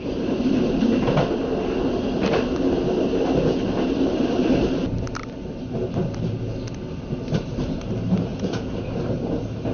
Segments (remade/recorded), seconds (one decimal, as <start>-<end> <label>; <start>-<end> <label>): 0.0-8.3 recorded; 8.3-8.8 remade; 8.8-9.7 recorded